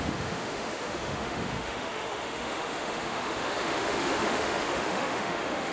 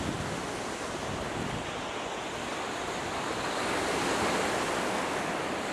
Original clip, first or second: second